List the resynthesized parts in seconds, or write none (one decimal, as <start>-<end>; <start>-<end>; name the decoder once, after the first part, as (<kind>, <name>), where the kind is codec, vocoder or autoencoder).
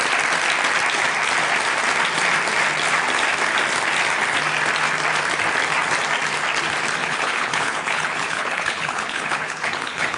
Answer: 7.0-10.2 (codec, HILCodec)